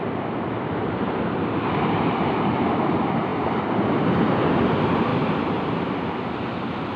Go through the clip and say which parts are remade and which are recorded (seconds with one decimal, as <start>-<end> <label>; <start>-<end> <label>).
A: 0.0-7.0 recorded